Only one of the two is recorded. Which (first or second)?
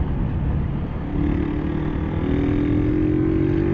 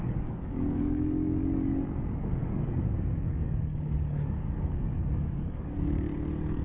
first